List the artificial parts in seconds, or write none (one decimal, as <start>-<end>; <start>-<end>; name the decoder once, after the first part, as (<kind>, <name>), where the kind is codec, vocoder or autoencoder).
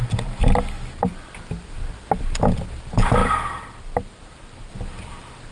none